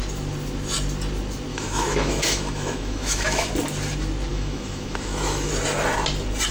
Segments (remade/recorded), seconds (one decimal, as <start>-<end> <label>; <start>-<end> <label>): 0.0-1.5 recorded; 1.5-3.5 remade; 3.5-4.3 recorded; 4.3-5.5 remade; 5.5-6.5 recorded